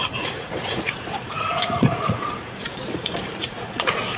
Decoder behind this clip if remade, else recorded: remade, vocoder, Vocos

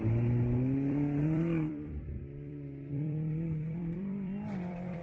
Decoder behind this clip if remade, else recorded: remade, vocoder, BigVGAN v2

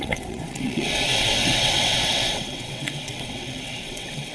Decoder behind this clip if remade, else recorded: remade, vocoder, WaveNeXt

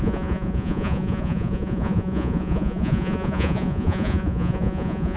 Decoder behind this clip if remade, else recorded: remade, vocoder, Vocos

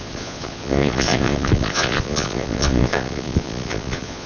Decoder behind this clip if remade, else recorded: remade, vocoder, Vocos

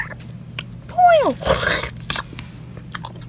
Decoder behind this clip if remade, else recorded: recorded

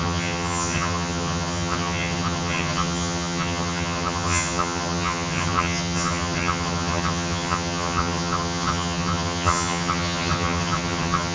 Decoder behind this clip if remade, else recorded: remade, vocoder, HiFi-GAN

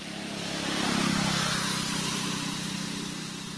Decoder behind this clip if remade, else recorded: recorded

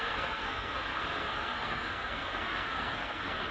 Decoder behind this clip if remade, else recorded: remade, codec, SNAC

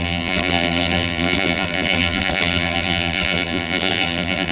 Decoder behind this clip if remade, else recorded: remade, vocoder, BigVGAN v2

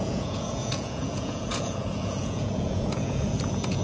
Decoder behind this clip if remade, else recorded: remade, vocoder, Vocos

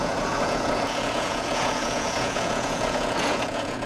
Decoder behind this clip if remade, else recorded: remade, vocoder, Vocos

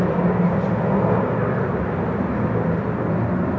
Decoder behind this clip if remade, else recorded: recorded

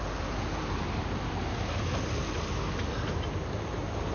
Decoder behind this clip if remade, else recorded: recorded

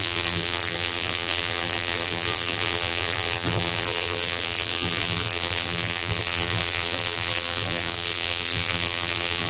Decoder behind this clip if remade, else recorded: remade, vocoder, BigVGAN v2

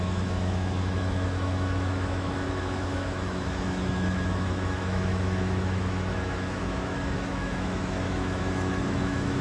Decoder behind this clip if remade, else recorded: remade, autoencoder, DAC-VAE